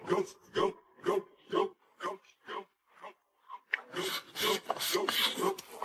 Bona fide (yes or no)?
yes